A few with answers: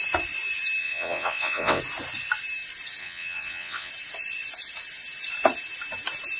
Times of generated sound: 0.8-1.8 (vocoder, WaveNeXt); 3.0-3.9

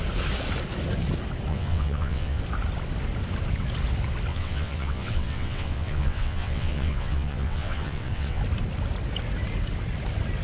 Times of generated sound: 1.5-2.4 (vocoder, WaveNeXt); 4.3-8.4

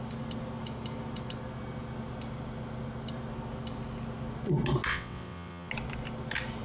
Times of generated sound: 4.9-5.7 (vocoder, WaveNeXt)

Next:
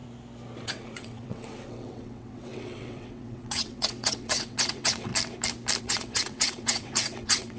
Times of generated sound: 0.6-5.1 (vocoder, WaveNeXt); 5.8-7.6

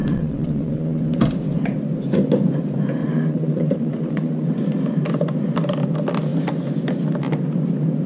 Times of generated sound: 0.0-1.2 (vocoder, WaveNeXt); 3.0-4.5